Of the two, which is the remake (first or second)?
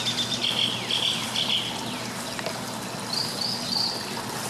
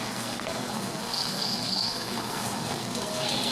second